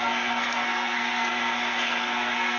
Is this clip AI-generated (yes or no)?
yes